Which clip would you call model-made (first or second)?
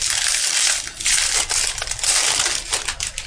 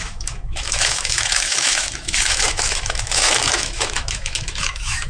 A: second